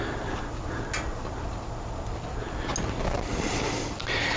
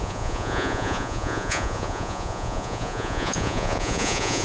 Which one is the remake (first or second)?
second